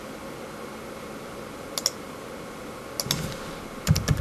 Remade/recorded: recorded